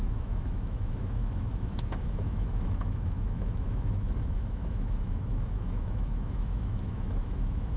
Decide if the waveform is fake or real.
fake